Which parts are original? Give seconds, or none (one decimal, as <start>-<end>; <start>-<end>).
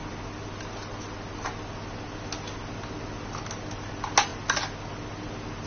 0.0-5.7